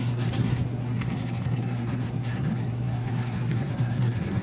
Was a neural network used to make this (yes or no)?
yes